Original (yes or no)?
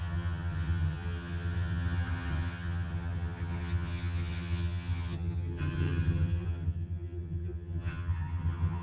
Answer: no